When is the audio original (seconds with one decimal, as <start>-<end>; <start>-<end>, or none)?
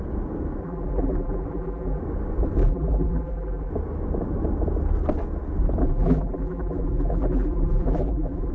0.0-0.6; 2.0-2.6; 3.7-5.8